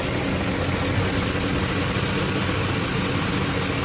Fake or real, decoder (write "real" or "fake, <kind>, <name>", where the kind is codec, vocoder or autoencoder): real